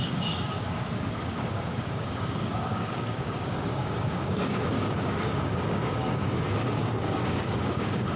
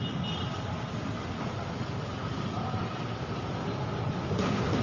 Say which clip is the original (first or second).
second